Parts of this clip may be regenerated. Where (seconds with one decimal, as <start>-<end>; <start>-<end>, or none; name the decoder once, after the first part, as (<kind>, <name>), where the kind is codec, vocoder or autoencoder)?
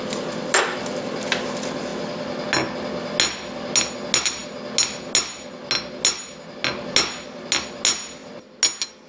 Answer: none